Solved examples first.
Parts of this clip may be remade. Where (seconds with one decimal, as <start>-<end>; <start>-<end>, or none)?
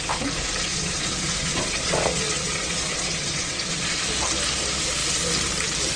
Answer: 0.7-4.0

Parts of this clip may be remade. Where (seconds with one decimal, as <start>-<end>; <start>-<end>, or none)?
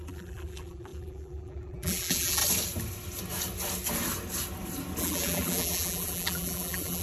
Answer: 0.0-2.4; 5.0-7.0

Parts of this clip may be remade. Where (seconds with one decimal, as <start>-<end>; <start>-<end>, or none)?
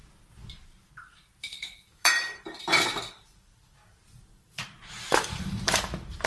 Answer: 0.5-6.3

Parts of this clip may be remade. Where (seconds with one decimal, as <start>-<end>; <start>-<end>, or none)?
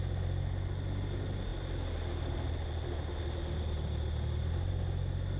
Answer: none